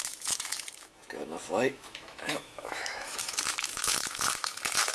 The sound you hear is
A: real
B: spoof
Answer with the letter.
B